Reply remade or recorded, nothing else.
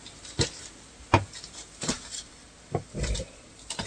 recorded